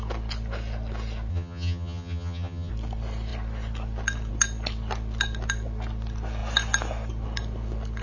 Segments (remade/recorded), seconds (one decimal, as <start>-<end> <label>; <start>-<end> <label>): 0.0-1.3 recorded; 1.3-2.7 remade; 2.7-8.0 recorded